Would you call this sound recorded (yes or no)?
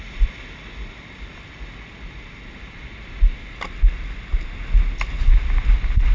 yes